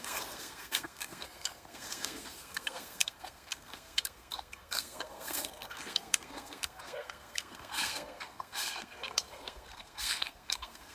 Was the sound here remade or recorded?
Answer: remade